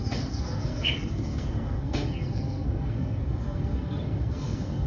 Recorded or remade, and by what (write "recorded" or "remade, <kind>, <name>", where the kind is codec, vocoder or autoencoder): remade, codec, SNAC